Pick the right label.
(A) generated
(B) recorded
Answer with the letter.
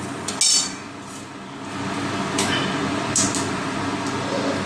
B